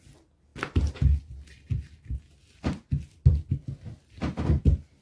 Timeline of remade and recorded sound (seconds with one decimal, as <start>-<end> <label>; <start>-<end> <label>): 0.0-5.0 recorded